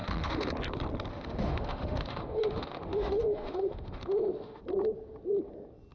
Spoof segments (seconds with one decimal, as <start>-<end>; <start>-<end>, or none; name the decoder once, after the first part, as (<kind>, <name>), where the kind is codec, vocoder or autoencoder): 0.0-0.5 (autoencoder, DAC-VAE); 1.1-4.6